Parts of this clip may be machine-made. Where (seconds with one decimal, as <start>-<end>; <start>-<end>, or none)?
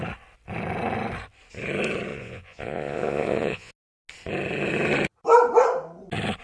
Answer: 2.1-3.7